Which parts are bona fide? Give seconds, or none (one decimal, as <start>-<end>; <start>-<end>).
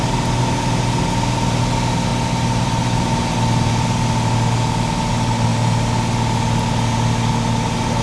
0.0-2.1; 3.7-8.0